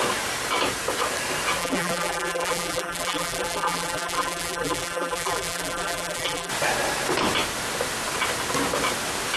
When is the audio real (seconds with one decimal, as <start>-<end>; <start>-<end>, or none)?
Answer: 0.0-1.6; 6.5-9.4

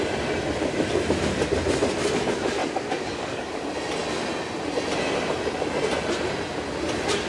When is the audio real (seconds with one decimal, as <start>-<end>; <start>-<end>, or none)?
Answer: 0.0-2.6; 3.6-7.3

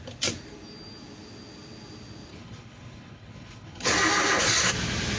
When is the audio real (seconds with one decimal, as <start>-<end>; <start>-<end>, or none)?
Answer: 0.0-2.3; 3.9-5.2

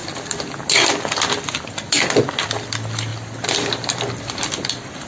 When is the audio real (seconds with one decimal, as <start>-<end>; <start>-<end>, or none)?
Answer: 0.0-3.1; 4.0-5.1

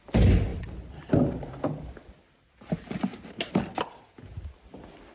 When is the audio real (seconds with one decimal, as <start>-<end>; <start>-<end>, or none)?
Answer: 0.0-5.1

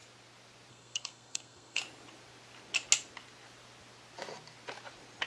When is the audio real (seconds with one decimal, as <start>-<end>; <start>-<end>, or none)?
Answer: 0.0-0.7; 1.8-5.3

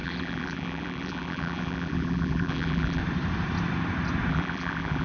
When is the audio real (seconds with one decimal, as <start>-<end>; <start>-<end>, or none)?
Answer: 3.0-4.3